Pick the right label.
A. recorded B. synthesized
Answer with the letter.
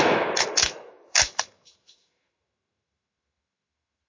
B